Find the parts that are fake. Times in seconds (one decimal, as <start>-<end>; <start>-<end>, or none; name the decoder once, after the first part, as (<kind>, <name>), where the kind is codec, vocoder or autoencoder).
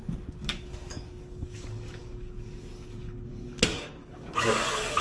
0.0-5.0 (codec, DAC)